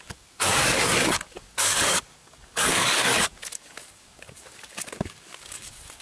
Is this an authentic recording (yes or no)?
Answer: no